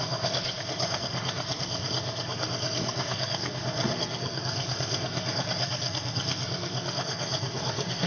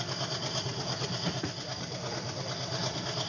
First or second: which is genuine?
second